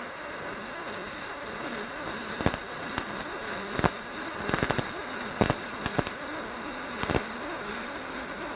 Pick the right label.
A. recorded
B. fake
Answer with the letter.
A